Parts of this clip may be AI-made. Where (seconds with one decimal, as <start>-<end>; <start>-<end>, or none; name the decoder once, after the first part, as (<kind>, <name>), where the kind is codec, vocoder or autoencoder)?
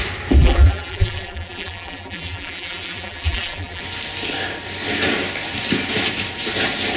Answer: 0.4-3.8 (vocoder, BigVGAN v2)